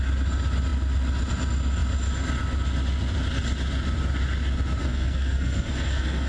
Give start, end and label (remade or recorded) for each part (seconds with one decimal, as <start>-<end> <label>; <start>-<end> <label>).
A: 0.0-4.8 recorded; 4.8-6.3 remade